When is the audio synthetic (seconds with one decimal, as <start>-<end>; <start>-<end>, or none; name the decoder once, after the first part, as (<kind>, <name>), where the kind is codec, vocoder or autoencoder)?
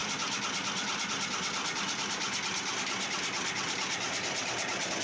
none